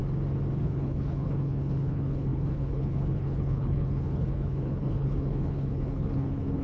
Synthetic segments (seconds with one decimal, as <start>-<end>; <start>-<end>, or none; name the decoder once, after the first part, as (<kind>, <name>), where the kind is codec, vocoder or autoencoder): 0.6-6.6 (codec, HILCodec)